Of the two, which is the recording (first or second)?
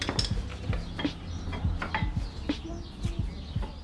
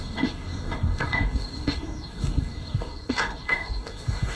first